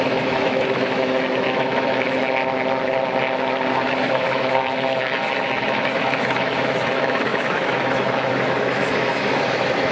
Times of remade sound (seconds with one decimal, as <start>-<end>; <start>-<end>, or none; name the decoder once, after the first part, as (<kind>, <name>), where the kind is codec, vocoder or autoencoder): 0.0-2.4 (autoencoder, DAC-VAE); 3.7-9.9